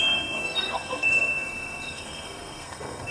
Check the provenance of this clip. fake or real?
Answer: fake